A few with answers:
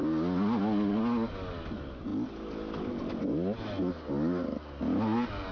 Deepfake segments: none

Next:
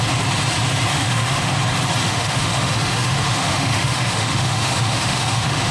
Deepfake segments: 0.9-1.5; 2.0-5.7

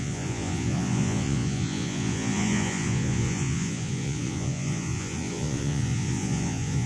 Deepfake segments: 0.0-6.9

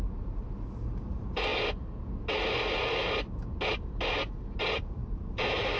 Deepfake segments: 0.0-1.5; 4.6-5.8

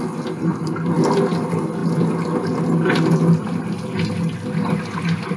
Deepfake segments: none

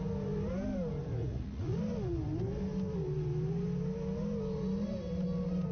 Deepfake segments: 1.2-1.8

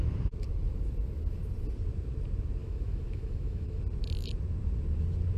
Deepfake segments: 2.6-3.8